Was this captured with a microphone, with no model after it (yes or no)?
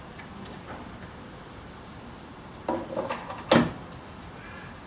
yes